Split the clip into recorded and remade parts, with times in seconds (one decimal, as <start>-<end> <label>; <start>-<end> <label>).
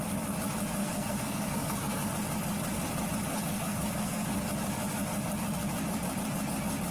0.0-0.8 recorded; 0.8-2.1 remade; 2.1-3.3 recorded; 3.3-4.3 remade; 4.3-6.9 recorded